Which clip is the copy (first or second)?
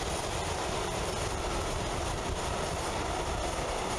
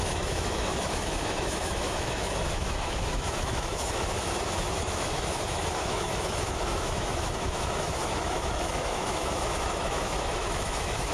second